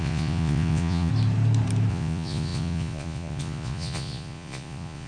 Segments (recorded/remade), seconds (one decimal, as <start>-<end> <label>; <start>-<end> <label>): 0.0-1.1 remade; 1.1-1.9 recorded; 1.9-5.1 remade